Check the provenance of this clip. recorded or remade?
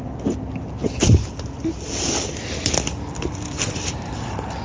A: recorded